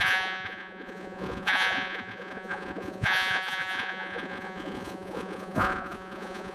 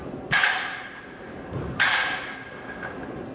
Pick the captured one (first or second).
second